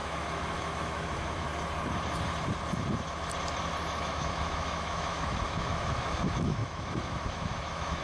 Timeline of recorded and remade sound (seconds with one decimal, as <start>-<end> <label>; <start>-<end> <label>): 0.0-1.5 remade; 1.5-4.0 recorded; 4.0-8.0 remade